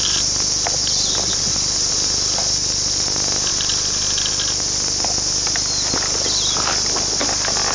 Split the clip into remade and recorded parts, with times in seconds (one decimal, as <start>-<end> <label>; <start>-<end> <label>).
0.0-7.7 recorded